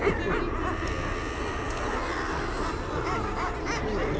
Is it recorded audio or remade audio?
recorded